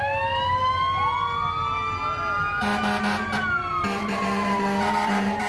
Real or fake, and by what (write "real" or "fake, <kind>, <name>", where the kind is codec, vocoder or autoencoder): real